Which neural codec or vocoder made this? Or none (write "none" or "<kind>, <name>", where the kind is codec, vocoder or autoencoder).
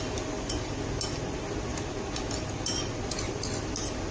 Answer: none